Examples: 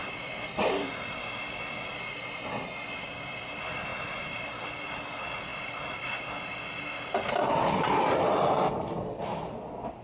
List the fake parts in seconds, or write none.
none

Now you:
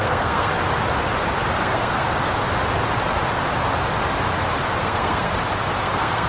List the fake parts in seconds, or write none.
0.0-0.5 (codec, SNAC); 1.6-2.1; 4.8-5.3; 5.8-6.3

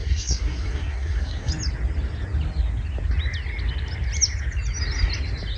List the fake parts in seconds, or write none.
0.0-1.5 (codec, SNAC)

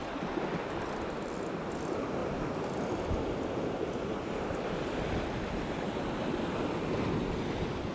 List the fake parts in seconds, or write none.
none